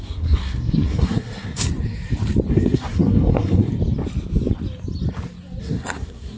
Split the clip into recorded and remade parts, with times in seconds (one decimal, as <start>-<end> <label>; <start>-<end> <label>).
0.0-1.7 remade; 1.7-2.5 recorded; 2.5-3.7 remade; 3.7-5.6 recorded; 5.6-6.4 remade